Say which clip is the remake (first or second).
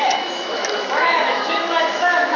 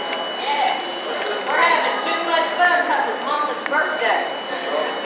first